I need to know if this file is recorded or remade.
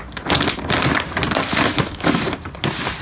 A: recorded